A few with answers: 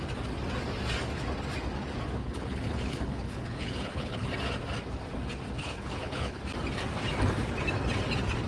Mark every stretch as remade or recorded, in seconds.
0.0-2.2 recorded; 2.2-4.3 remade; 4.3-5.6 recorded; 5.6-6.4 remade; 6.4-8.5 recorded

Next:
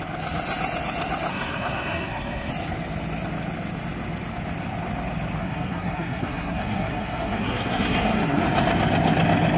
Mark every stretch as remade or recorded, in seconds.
0.0-1.3 recorded; 1.3-2.5 remade; 2.5-5.4 recorded; 5.4-8.4 remade; 8.4-9.6 recorded